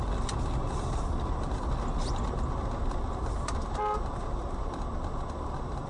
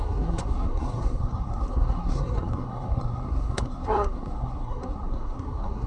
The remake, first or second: second